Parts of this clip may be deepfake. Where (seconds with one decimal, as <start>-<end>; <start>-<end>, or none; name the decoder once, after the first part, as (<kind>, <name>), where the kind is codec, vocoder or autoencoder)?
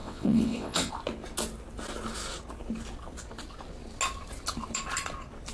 0.0-0.9 (vocoder, WaveNeXt)